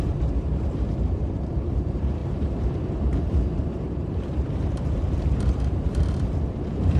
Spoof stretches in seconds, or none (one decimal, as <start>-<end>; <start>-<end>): 0.0-7.0